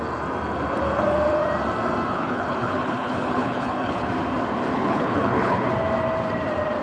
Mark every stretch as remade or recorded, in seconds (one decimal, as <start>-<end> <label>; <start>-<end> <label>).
0.0-2.1 recorded; 2.1-4.1 remade; 4.1-4.7 recorded; 4.7-5.7 remade; 5.7-6.8 recorded